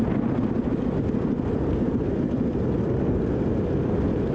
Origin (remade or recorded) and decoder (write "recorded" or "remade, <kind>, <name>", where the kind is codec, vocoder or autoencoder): recorded